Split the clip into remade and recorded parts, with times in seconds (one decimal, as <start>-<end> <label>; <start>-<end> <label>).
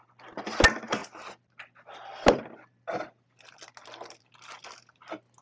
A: 0.0-5.4 recorded